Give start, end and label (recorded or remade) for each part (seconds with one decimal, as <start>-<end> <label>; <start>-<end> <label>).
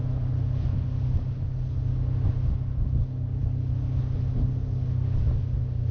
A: 0.0-5.9 recorded